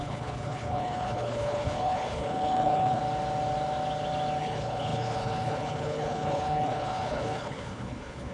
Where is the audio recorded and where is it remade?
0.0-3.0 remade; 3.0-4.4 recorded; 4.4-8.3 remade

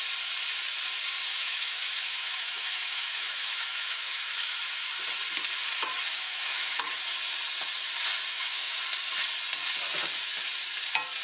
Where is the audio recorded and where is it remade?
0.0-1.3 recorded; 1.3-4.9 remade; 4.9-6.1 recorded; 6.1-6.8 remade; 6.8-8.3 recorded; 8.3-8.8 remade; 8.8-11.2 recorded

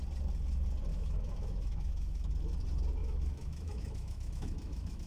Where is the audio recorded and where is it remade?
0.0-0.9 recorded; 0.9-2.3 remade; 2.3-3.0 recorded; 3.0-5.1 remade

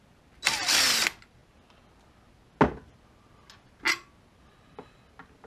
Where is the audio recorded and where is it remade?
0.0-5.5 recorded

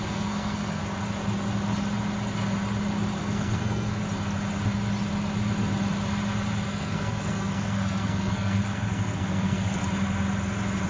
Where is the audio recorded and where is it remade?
0.0-0.8 remade; 0.8-3.2 recorded; 3.2-4.0 remade; 4.0-6.7 recorded; 6.7-9.8 remade; 9.8-10.9 recorded

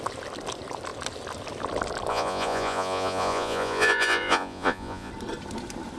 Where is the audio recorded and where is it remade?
0.0-2.1 recorded; 2.1-5.1 remade; 5.1-6.0 recorded

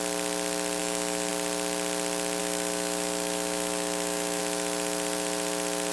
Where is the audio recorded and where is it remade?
0.0-0.8 recorded; 0.8-1.3 remade; 1.3-2.4 recorded; 2.4-4.4 remade; 4.4-5.9 recorded